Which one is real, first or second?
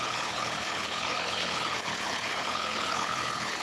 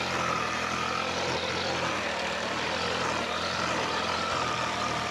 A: second